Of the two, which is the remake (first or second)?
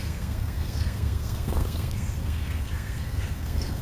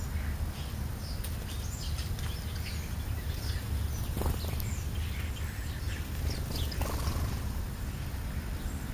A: first